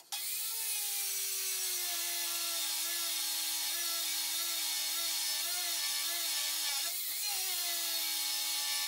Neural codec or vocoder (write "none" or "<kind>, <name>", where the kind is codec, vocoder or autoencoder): none